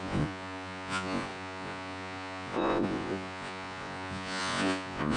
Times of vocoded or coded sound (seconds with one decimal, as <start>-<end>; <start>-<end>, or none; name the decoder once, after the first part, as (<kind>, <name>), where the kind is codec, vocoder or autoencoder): 0.0-5.2 (vocoder, Vocos)